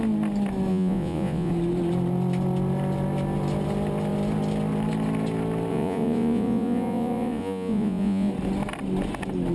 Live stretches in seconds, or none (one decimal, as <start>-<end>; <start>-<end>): 0.0-0.7; 1.5-5.7; 8.3-9.5